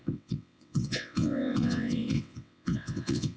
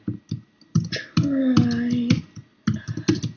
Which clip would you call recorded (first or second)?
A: second